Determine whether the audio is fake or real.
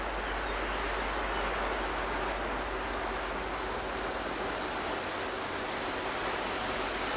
real